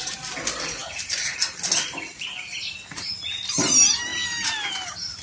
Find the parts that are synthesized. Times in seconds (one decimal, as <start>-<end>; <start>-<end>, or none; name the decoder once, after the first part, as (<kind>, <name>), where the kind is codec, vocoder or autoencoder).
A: none